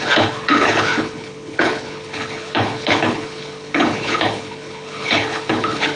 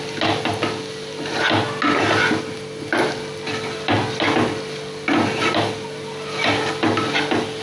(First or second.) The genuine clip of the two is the second